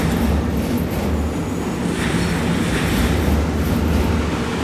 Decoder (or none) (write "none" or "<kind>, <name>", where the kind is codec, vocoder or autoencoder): none